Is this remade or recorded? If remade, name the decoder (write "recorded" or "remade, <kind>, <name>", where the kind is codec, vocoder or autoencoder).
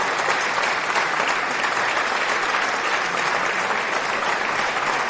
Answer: recorded